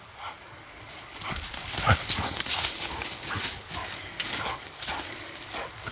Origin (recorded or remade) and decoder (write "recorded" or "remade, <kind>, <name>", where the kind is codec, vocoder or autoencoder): remade, codec, DAC